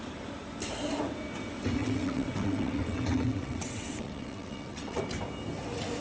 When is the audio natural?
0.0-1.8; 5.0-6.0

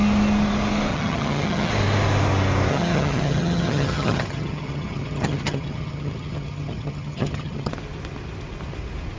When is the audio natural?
0.0-0.9; 1.7-2.7; 7.7-9.2

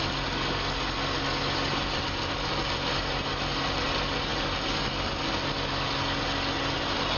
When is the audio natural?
0.0-7.2

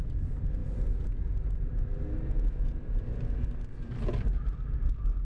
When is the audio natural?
0.0-5.2

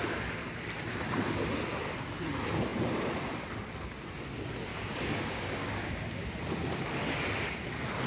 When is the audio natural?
0.0-4.7; 6.4-8.1